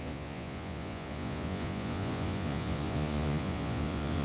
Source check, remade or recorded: remade